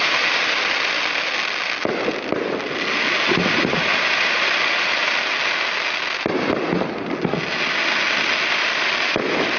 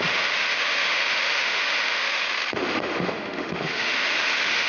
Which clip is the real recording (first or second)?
first